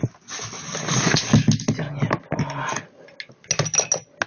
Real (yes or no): yes